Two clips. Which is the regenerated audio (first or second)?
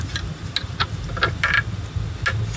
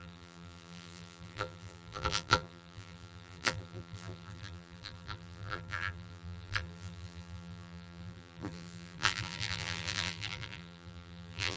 second